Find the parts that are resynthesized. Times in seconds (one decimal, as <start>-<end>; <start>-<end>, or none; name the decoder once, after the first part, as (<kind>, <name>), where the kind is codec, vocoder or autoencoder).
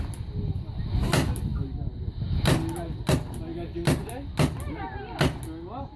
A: none